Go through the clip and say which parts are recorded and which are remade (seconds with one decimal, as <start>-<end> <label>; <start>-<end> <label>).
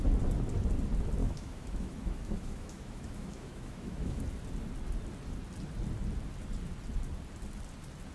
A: 0.0-1.2 recorded; 1.2-4.2 remade; 4.2-8.1 recorded